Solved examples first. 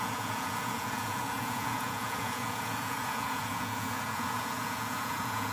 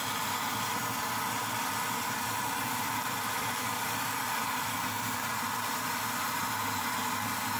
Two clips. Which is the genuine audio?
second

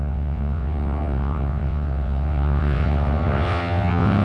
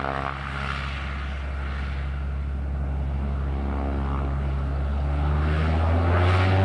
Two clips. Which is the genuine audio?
second